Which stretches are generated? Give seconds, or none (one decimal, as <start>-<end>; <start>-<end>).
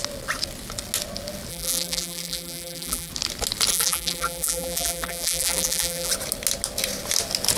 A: 1.5-3.1; 3.7-6.1